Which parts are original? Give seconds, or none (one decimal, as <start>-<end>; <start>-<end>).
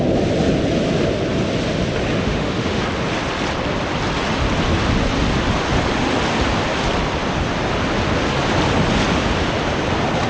0.0-2.2; 2.8-10.3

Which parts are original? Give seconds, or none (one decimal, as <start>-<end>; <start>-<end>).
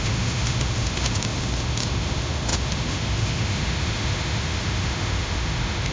none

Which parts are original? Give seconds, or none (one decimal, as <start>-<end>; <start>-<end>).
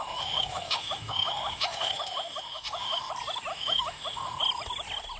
3.1-3.5; 4.4-5.2